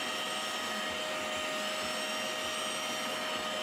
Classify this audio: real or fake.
real